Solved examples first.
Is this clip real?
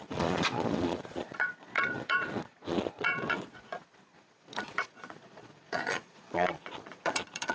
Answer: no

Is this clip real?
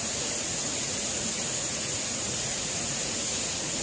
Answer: no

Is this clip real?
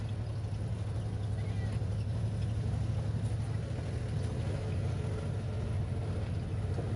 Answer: yes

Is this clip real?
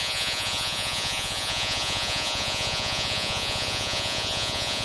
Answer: no